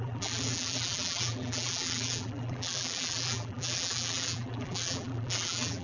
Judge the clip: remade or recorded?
remade